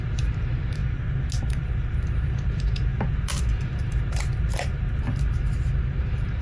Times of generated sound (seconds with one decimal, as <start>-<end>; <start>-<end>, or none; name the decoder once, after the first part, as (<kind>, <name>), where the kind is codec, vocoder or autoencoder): 0.0-0.8 (vocoder, BigVGAN v2); 1.4-6.4